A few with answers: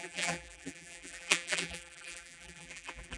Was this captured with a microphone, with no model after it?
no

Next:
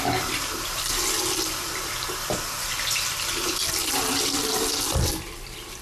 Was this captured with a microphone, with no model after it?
no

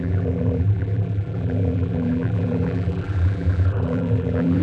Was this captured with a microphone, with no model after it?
no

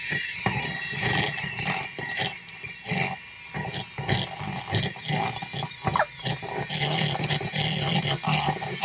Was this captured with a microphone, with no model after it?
yes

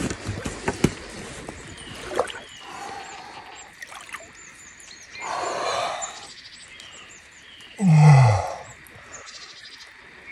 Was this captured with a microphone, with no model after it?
yes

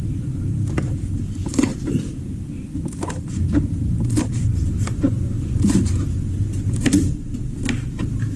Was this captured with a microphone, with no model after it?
no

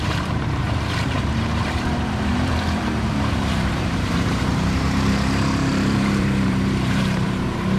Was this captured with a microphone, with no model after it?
no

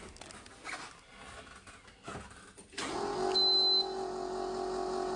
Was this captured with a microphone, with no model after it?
yes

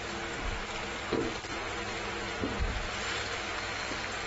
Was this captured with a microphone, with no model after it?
yes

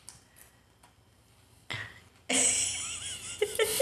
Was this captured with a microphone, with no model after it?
yes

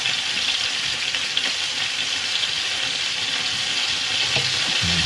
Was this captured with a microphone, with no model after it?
yes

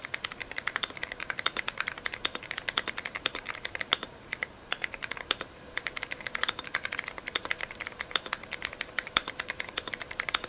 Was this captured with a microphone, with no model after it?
no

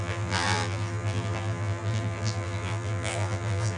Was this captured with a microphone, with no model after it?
no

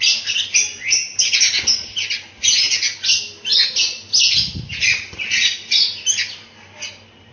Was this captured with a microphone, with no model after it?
yes